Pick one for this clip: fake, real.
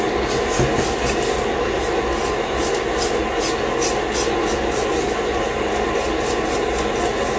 real